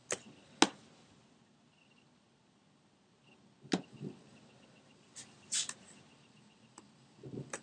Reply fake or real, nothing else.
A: real